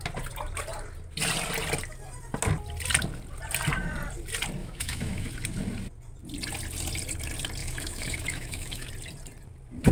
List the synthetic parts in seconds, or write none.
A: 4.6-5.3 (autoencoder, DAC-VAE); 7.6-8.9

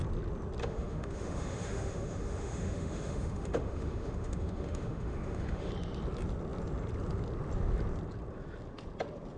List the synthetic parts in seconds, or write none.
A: 0.6-5.7 (autoencoder, DAC-VAE)

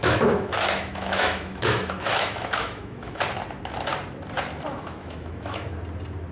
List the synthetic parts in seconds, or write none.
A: 0.0-3.2 (autoencoder, DAC-VAE); 4.7-5.7

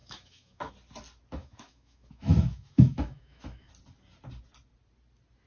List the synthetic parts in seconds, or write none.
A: 0.0-0.7 (autoencoder, DAC-VAE); 1.4-3.7

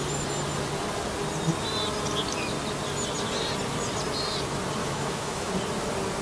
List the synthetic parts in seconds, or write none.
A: 4.8-5.5 (autoencoder, DAC-VAE)

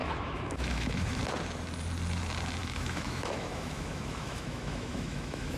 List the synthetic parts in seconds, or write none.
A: 0.0-1.2 (autoencoder, DAC-VAE); 2.6-5.6

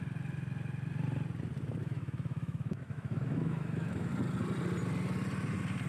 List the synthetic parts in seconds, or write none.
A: 1.8-4.1 (autoencoder, DAC-VAE)

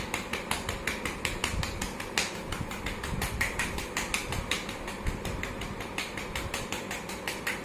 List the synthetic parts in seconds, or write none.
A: none